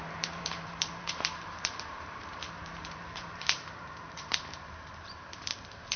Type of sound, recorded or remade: remade